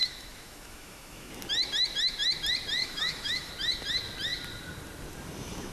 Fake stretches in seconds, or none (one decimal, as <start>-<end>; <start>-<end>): 0.0-1.3; 2.8-3.5